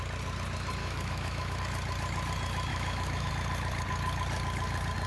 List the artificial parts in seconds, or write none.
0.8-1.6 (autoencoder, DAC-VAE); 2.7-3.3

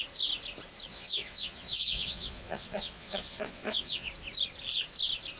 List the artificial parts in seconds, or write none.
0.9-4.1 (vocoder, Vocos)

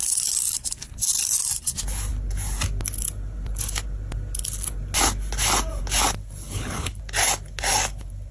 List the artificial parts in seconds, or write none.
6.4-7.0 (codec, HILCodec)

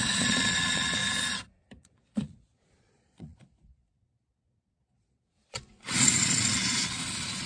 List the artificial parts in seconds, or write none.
0.0-1.0 (vocoder, Vocos); 1.8-7.5